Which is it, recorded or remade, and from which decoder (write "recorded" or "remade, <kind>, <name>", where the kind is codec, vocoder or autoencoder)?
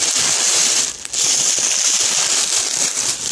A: recorded